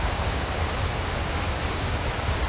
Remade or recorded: remade